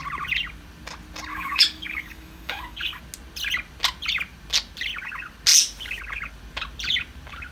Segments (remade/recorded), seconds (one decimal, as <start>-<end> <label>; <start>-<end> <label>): 0.0-1.3 recorded; 1.3-3.0 remade; 3.0-7.5 recorded